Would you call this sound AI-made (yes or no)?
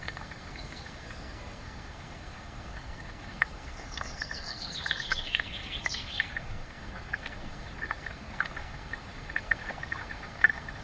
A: yes